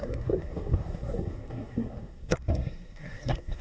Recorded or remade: remade